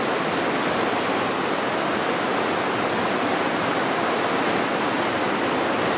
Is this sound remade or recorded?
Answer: recorded